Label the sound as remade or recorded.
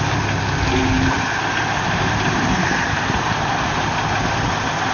recorded